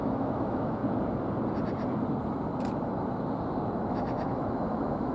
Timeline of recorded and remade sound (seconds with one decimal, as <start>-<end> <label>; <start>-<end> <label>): 0.0-0.8 remade; 0.8-3.9 recorded; 3.9-5.1 remade

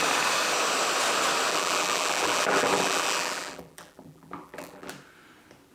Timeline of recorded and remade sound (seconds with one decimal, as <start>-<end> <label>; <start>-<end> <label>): 0.0-1.5 recorded; 1.5-4.9 remade; 4.9-5.7 recorded

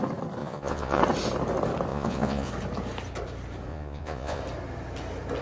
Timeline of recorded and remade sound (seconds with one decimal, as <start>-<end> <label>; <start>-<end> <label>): 0.0-0.4 recorded; 0.4-1.0 remade; 1.0-1.9 recorded; 1.9-2.5 remade; 2.5-3.7 recorded; 3.7-4.4 remade; 4.4-5.4 recorded

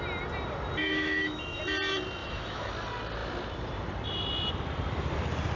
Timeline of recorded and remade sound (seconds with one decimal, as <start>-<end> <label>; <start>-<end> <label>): 0.0-0.8 recorded; 0.8-1.6 remade; 1.6-2.2 recorded; 2.2-2.7 remade; 2.7-5.6 recorded

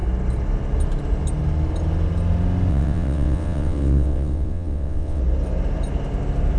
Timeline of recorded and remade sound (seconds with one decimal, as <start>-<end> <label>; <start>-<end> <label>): 0.0-2.7 recorded; 2.7-5.2 remade; 5.2-6.6 recorded

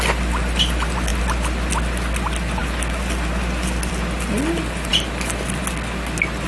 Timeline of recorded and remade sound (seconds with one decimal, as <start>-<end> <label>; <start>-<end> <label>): 0.0-4.9 recorded; 4.9-5.6 remade; 5.6-6.5 recorded

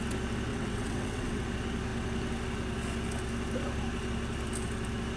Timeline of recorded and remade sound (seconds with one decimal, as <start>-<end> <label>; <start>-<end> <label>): 0.0-0.5 recorded; 0.5-1.4 remade; 1.4-5.2 recorded